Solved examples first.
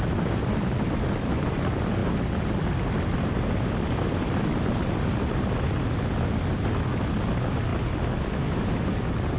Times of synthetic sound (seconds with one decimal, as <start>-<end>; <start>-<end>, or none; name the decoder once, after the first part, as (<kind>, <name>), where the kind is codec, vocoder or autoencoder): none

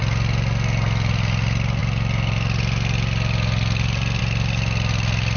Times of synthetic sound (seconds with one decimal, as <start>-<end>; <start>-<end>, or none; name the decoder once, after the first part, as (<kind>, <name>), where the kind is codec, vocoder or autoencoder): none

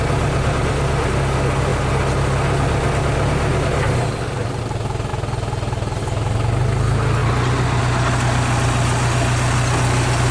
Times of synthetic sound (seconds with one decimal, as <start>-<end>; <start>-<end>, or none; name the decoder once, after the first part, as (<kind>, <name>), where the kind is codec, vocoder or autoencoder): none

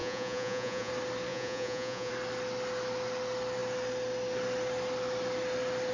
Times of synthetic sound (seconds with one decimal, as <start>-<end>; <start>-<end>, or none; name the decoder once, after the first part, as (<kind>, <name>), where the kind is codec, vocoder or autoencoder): 0.0-0.9 (vocoder, Vocos); 1.3-2.1